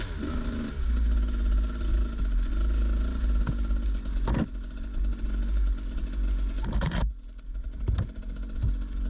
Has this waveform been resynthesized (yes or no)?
no